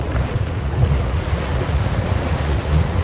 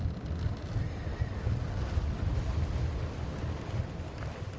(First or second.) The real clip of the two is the second